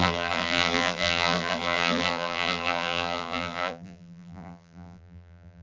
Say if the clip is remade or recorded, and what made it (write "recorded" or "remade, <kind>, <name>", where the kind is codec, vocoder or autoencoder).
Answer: remade, vocoder, BigVGAN v2